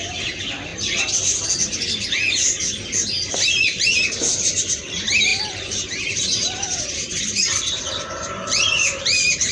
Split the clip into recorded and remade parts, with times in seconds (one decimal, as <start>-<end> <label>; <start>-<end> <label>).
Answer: 0.0-0.7 remade; 0.7-3.5 recorded; 3.5-9.5 remade